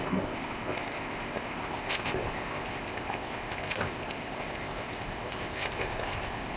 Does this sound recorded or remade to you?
remade